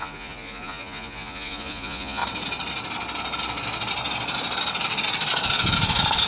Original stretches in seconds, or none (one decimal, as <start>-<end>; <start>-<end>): 2.2-6.3